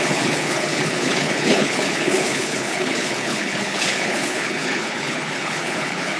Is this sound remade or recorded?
remade